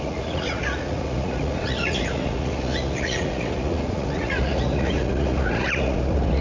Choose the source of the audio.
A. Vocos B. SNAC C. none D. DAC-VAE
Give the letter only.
A